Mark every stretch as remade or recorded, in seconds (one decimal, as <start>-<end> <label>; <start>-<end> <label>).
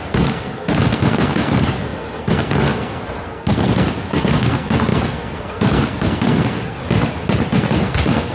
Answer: 0.0-6.8 remade; 6.8-7.5 recorded; 7.5-8.3 remade